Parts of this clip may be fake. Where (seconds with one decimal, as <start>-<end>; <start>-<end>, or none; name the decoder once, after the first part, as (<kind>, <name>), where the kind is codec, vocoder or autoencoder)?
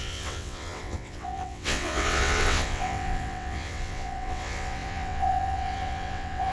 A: 0.0-6.5 (vocoder, WaveNeXt)